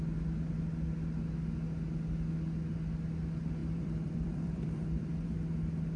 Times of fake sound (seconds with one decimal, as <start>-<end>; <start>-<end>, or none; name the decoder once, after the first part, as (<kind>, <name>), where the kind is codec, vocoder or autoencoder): 3.6-5.3 (vocoder, BigVGAN v2)